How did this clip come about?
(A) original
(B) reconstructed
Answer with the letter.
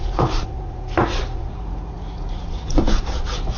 B